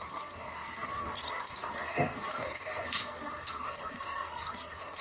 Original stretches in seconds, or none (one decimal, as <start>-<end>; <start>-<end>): none